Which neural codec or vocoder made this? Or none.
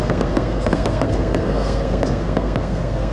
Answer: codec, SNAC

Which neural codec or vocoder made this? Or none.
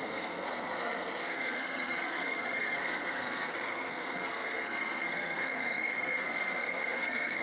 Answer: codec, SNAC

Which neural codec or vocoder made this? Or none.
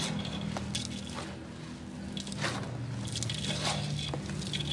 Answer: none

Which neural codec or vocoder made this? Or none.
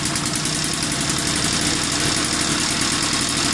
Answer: none